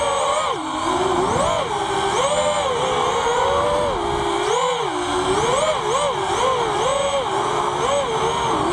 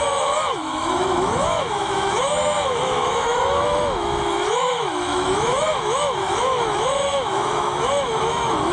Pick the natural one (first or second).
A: first